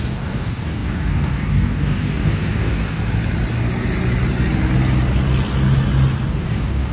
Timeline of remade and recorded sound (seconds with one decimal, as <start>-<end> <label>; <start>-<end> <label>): 0.0-3.0 remade; 3.0-6.3 recorded; 6.3-6.9 remade